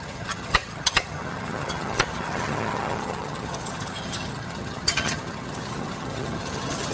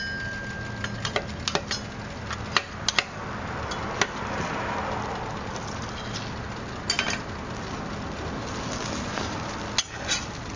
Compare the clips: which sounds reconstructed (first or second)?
first